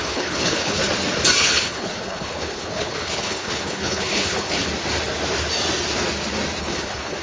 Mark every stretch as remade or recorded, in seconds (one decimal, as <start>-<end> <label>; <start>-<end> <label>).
0.0-0.8 remade; 0.8-1.4 recorded; 1.4-4.7 remade; 4.7-6.6 recorded; 6.6-7.2 remade

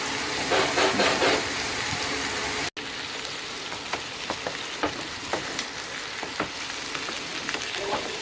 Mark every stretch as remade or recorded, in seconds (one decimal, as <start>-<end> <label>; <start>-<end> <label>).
0.0-8.2 recorded